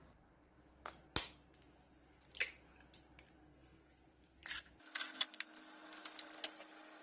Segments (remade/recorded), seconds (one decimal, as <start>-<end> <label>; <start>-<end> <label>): 0.0-3.4 recorded; 3.4-3.9 remade; 3.9-7.0 recorded